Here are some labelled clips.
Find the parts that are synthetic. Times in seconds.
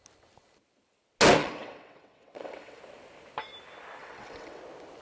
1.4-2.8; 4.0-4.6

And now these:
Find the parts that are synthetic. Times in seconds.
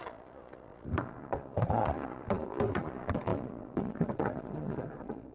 0.0-5.3